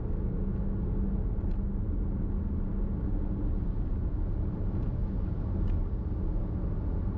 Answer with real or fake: real